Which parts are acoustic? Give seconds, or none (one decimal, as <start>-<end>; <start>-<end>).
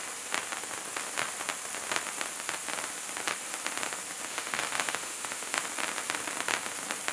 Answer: 0.0-4.3; 5.6-7.1